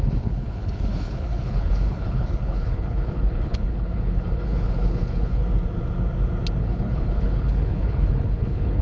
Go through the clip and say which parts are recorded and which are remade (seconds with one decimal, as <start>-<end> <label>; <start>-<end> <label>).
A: 0.0-5.4 remade; 5.4-6.6 recorded; 6.6-8.8 remade